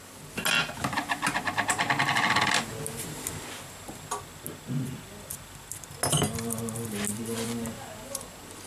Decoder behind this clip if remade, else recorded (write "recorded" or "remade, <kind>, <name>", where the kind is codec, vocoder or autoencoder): recorded